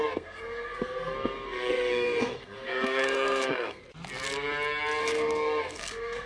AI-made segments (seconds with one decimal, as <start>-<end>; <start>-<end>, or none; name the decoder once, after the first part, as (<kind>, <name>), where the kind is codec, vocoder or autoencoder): 0.0-3.8 (codec, SNAC); 5.0-6.3